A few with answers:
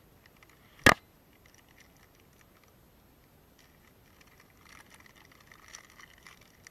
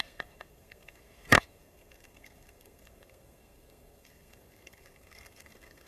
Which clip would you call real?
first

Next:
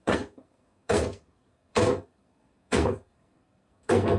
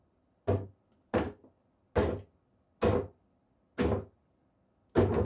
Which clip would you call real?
second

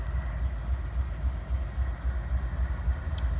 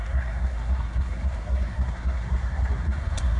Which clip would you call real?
first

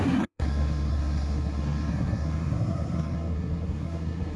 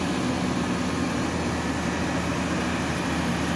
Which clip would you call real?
second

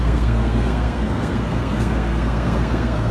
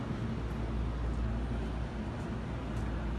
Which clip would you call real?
second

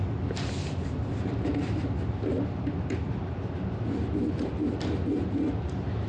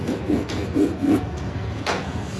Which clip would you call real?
first